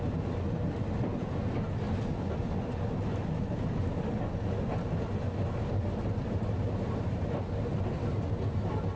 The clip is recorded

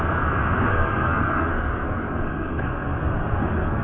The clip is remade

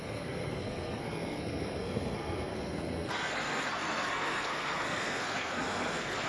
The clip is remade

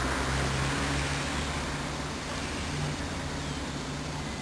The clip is recorded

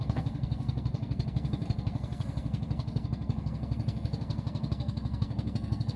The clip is remade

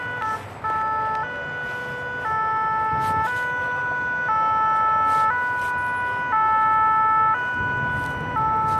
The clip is recorded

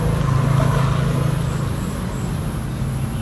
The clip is recorded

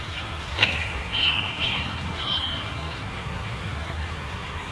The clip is remade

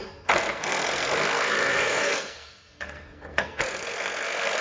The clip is remade